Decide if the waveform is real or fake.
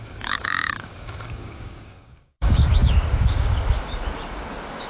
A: fake